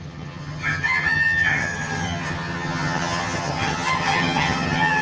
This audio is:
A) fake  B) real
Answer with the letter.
A